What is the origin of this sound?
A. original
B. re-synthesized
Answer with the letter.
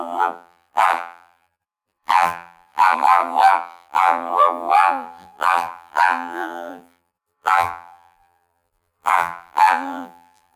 B